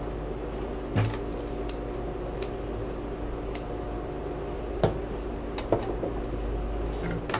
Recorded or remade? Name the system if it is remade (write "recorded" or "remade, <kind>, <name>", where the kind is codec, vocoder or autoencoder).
recorded